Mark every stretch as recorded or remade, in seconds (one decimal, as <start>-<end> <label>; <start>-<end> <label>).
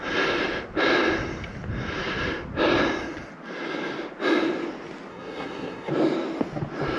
0.0-5.1 recorded; 5.1-5.9 remade; 5.9-7.0 recorded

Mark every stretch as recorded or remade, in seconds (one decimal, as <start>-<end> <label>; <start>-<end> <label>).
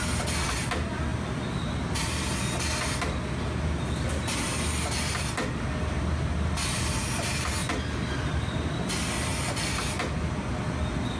0.0-11.2 recorded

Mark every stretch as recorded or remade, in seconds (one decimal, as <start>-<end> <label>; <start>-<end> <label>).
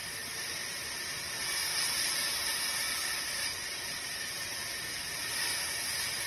0.0-1.0 remade; 1.0-1.7 recorded; 1.7-5.5 remade; 5.5-6.3 recorded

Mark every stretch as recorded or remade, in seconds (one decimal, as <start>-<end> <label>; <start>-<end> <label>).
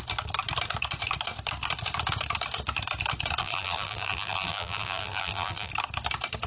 0.0-3.4 recorded; 3.4-5.7 remade; 5.7-6.5 recorded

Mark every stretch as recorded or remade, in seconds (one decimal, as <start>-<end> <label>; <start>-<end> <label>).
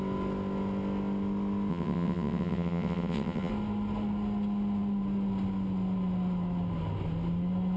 0.0-1.7 recorded; 1.7-3.5 remade; 3.5-7.8 recorded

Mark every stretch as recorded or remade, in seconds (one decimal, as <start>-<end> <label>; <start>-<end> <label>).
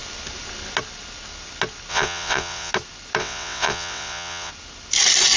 0.0-1.9 recorded; 1.9-2.7 remade; 2.7-3.2 recorded; 3.2-4.5 remade; 4.5-5.4 recorded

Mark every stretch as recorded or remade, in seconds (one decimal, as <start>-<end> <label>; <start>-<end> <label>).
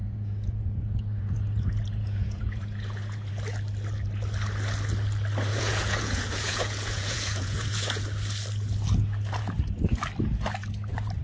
0.0-3.3 remade; 3.3-5.5 recorded; 5.5-8.0 remade; 8.0-11.2 recorded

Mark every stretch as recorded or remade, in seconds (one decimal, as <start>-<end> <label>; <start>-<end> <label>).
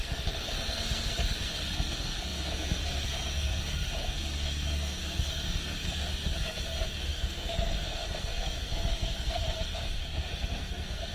0.0-11.1 remade